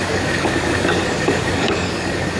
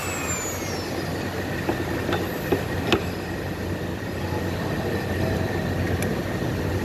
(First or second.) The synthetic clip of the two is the first